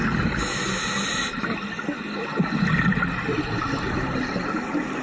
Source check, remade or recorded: recorded